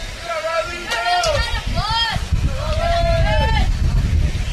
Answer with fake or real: real